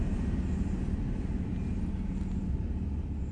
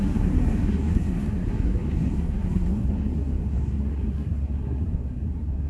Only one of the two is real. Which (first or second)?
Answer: first